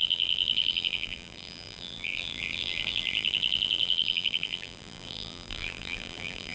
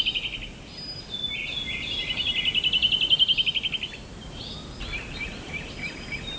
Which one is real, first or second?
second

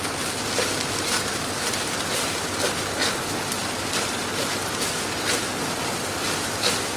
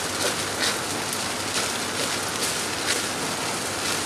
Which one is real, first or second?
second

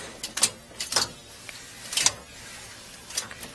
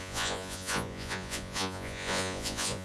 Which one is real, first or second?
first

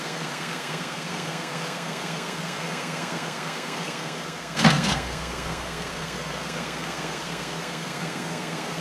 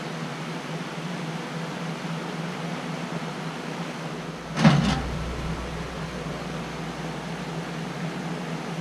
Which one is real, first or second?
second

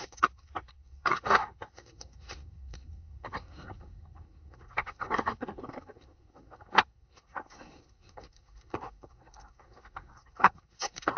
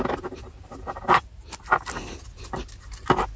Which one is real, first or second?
second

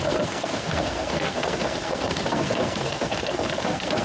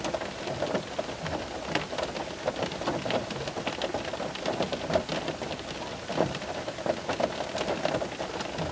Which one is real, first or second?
second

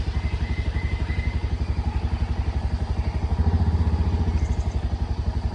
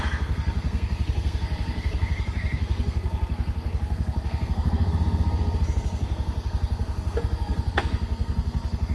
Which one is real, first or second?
first